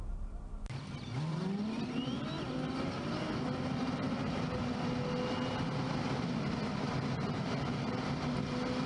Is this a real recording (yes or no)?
yes